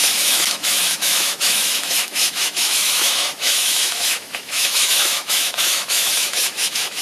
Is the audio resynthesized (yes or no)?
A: yes